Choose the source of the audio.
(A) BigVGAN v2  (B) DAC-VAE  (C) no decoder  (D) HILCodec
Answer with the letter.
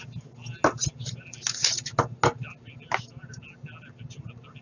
C